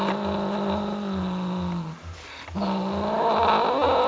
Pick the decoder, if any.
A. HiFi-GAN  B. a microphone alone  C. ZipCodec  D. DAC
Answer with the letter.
B